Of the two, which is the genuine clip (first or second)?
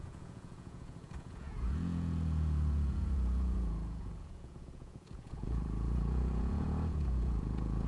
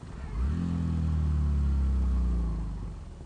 second